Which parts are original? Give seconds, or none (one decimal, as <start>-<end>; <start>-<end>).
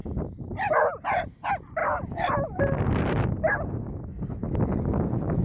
0.0-5.4